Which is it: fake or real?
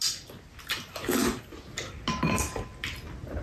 real